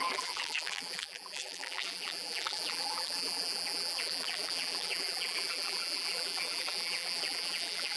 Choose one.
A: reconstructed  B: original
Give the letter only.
A